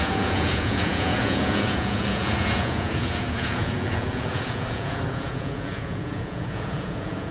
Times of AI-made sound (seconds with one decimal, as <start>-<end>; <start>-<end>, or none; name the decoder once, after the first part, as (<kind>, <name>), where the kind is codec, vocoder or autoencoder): 0.0-7.3 (vocoder, Vocos)